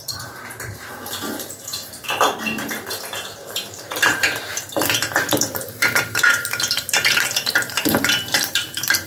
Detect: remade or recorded remade